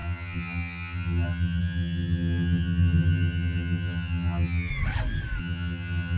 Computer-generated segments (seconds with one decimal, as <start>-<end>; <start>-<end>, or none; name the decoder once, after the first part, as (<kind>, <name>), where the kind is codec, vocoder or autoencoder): 0.0-4.7 (vocoder, HiFi-GAN); 5.4-6.2